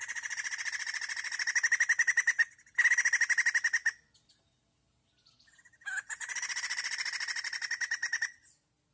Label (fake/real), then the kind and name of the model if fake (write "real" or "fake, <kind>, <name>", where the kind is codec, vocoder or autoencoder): real